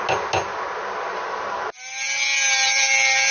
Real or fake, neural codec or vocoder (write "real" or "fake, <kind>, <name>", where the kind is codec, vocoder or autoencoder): real